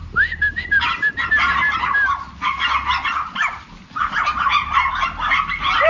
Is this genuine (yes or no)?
yes